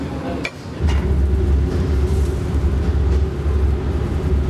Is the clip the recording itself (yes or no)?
yes